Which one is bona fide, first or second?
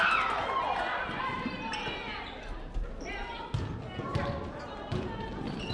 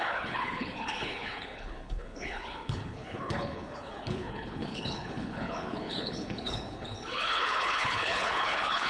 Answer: first